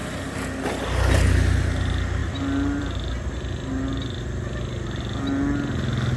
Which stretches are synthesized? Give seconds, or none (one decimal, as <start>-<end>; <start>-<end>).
none